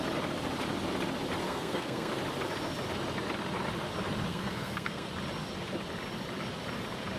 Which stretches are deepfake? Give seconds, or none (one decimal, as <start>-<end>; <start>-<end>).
1.4-2.1; 4.3-5.1